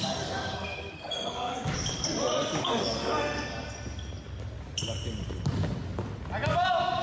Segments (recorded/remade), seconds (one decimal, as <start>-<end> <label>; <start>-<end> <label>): 0.0-1.5 remade; 1.5-2.6 recorded; 2.6-3.5 remade; 3.5-7.0 recorded